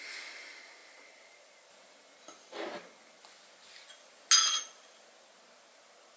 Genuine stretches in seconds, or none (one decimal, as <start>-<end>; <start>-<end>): 0.0-6.2